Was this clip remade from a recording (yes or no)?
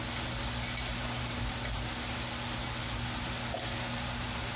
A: no